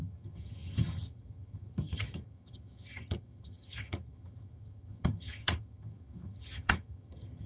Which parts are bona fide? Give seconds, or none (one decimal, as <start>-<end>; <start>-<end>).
none